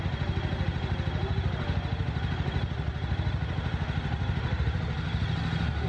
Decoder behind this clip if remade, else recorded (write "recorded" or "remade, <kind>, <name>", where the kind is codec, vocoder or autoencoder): recorded